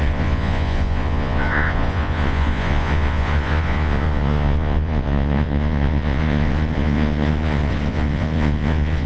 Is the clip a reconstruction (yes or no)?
yes